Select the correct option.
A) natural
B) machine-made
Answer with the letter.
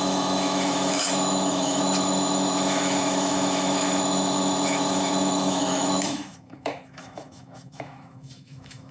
B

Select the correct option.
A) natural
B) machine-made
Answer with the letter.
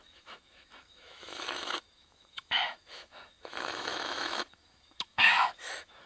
B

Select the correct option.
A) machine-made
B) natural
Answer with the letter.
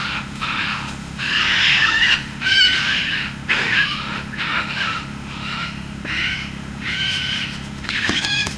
A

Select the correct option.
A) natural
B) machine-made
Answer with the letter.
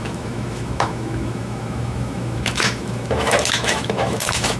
B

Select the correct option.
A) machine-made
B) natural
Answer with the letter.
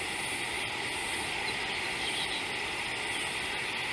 B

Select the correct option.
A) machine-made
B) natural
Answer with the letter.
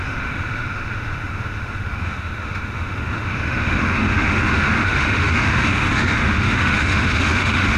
A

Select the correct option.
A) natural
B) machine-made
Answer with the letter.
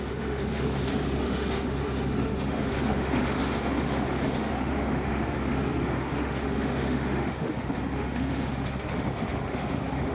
B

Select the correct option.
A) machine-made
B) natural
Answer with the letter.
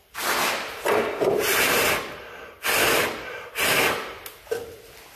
B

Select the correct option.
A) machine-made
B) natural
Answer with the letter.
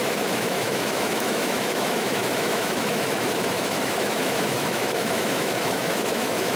A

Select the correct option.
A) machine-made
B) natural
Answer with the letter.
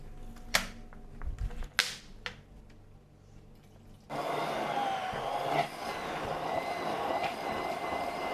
B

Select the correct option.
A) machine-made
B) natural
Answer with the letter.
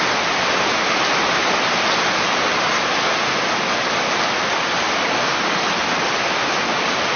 B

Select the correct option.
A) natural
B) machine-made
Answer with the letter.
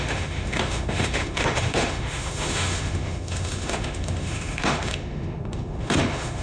B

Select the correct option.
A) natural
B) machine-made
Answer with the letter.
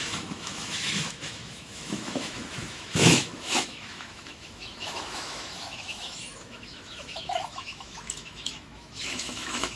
B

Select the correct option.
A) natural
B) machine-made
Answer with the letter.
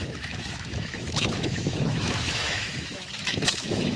B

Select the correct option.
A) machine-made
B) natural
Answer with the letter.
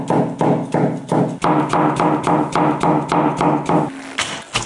B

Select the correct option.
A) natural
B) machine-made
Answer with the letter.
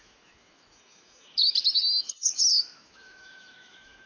B